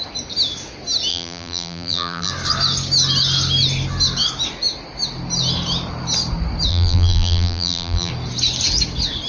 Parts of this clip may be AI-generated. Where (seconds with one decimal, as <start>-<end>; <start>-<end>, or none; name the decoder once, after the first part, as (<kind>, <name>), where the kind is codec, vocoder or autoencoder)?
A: 1.1-2.3 (vocoder, BigVGAN v2); 6.7-8.1